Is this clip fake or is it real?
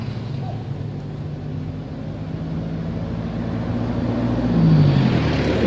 real